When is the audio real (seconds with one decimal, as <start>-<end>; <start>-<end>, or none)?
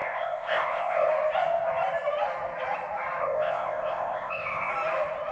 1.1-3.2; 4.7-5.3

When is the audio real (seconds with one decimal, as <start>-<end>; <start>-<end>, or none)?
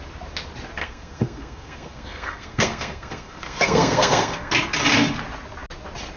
0.0-0.8; 4.5-6.2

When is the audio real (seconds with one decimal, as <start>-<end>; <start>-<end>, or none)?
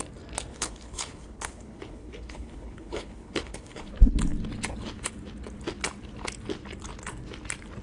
0.0-0.5; 3.9-7.8